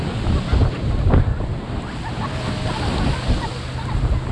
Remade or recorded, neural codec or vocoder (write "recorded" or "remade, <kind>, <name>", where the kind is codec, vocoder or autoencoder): recorded